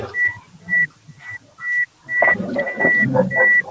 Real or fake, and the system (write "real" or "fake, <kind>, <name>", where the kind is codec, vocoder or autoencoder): real